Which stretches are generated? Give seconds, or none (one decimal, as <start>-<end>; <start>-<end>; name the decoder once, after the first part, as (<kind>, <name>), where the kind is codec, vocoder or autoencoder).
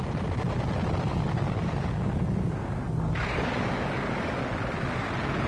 1.1-4.4 (codec, DAC)